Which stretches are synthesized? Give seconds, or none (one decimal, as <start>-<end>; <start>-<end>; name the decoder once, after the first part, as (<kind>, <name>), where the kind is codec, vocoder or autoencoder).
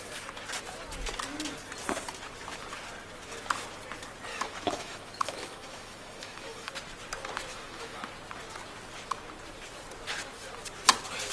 4.3-6.7 (autoencoder, DAC-VAE); 7.5-8.0